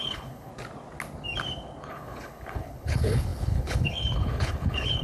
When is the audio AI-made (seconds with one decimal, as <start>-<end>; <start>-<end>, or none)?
0.0-0.5; 1.9-5.0